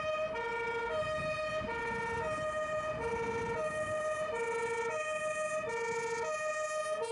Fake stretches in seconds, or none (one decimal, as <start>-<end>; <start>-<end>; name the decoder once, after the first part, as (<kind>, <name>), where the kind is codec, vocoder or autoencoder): none